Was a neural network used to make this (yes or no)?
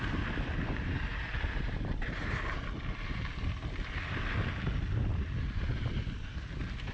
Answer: no